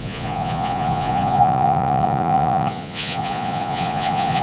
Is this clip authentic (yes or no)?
no